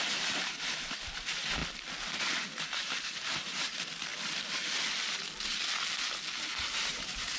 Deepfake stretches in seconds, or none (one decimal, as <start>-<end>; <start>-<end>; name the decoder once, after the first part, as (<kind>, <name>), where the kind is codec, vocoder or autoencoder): 0.0-1.6 (vocoder, BigVGAN v2); 2.2-4.1; 6.4-7.4